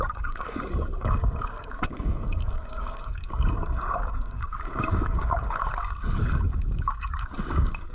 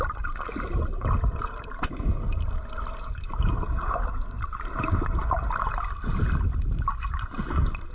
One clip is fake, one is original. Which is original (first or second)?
second